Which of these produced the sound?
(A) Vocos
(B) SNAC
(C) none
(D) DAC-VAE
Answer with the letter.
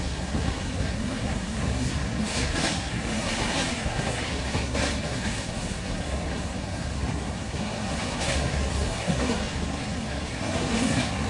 B